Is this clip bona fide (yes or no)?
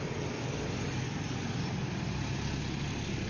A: yes